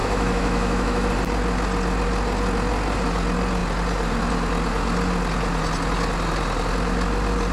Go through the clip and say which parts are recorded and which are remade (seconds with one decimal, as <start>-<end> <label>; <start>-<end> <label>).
0.0-1.1 remade; 1.1-7.5 recorded